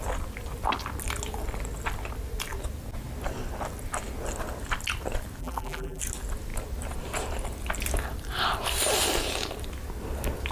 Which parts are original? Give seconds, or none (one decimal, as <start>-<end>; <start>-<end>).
0.0-5.4; 6.0-10.5